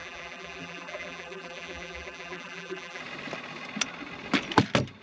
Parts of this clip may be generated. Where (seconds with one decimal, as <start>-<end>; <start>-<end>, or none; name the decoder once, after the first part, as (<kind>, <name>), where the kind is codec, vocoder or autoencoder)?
0.0-3.0 (vocoder, BigVGAN v2)

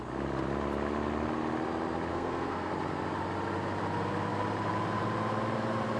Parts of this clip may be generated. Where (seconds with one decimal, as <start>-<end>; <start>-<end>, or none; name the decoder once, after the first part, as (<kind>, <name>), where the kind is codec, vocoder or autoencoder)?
2.1-2.7 (codec, SNAC)

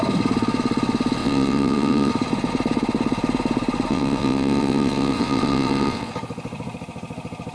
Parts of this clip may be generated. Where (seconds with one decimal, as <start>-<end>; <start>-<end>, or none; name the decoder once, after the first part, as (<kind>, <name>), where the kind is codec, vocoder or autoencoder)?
1.2-2.1 (vocoder, WaveNeXt); 3.9-6.1